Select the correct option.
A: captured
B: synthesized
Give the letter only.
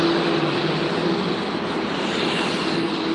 A